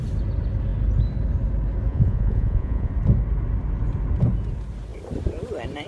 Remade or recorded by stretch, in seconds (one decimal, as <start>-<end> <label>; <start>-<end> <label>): 0.0-1.9 recorded; 1.9-2.9 remade; 2.9-5.9 recorded